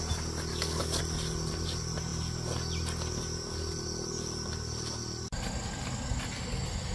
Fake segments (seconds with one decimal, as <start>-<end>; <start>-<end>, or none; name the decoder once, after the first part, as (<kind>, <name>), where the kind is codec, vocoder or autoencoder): 0.5-1.0 (codec, DAC)